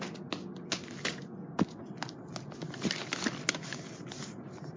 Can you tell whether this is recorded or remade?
recorded